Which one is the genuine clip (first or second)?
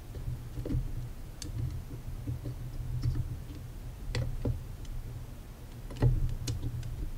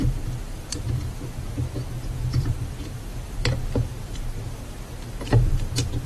first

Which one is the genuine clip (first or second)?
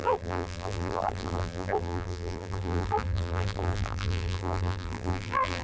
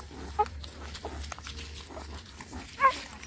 second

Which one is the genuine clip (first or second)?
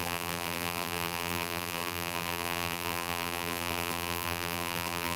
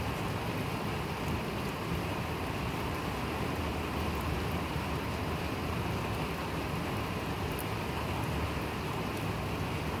second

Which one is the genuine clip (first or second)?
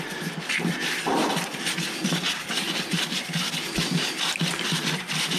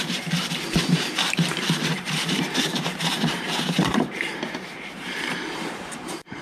first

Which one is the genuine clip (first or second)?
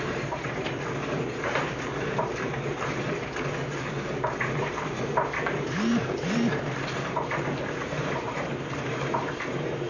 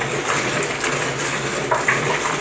second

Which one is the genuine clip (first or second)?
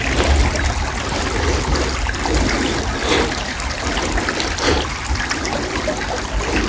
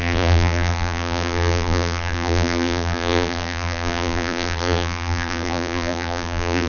first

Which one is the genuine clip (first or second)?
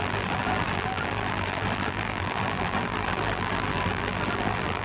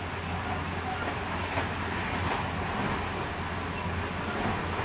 second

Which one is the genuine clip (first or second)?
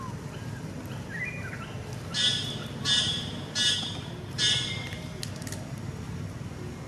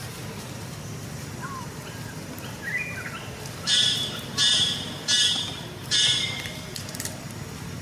first